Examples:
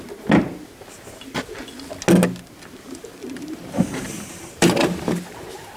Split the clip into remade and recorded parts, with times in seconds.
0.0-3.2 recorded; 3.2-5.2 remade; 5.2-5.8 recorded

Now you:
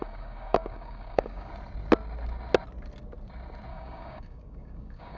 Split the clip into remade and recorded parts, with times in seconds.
0.0-1.5 remade; 1.5-3.7 recorded; 3.7-5.2 remade